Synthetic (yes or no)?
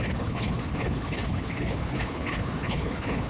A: yes